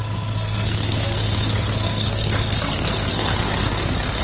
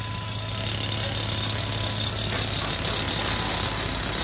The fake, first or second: first